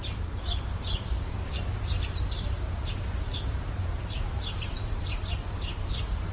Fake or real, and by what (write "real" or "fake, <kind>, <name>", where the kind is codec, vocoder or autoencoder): fake, vocoder, BigVGAN v2